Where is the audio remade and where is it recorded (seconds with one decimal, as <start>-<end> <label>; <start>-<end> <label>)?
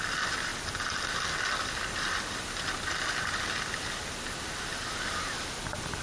0.0-0.5 remade; 0.5-4.1 recorded; 4.1-6.0 remade